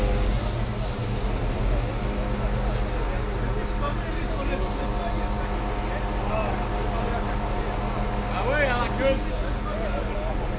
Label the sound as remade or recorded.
recorded